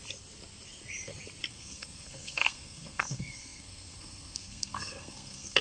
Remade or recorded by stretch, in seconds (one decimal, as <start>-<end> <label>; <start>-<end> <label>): 0.0-1.5 recorded; 1.5-5.6 remade

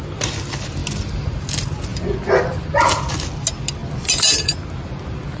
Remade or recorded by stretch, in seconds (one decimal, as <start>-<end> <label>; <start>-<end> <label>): 0.0-1.9 recorded; 1.9-3.1 remade; 3.1-3.8 recorded; 3.8-4.5 remade; 4.5-5.4 recorded

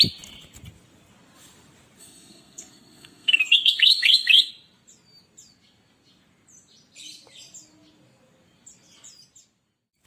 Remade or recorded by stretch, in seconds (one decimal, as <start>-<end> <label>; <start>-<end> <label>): 0.0-2.0 recorded; 2.0-4.5 remade; 4.5-10.1 recorded

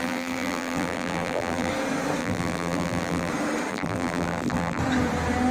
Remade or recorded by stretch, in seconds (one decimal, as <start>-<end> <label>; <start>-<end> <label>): 0.0-1.7 remade; 1.7-2.2 recorded; 2.2-3.3 remade; 3.3-3.7 recorded; 3.7-4.8 remade; 4.8-5.5 recorded

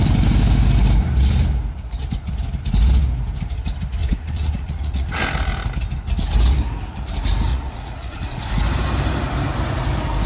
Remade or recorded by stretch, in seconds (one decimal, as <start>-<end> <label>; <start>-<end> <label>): 0.0-4.0 recorded; 4.0-5.2 remade; 5.2-7.5 recorded; 7.5-8.4 remade; 8.4-10.3 recorded

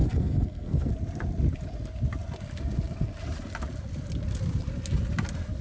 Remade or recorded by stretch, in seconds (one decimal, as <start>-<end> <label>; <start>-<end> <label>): 0.0-0.9 remade; 0.9-5.6 recorded